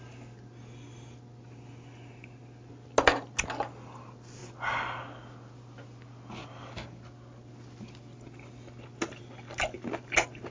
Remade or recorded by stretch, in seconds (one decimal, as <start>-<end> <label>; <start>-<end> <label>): 0.0-10.5 recorded